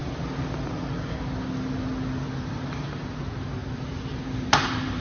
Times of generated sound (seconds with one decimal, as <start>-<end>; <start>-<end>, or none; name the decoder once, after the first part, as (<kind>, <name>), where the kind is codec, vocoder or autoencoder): 2.3-3.6 (vocoder, BigVGAN v2); 4.2-5.0